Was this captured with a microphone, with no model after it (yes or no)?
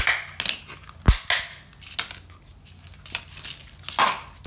yes